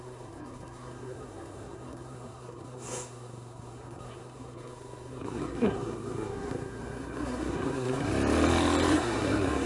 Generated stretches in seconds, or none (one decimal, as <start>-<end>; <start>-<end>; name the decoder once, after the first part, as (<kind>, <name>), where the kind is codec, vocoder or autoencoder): 0.0-8.1 (codec, SNAC); 8.9-9.7